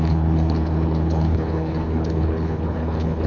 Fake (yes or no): yes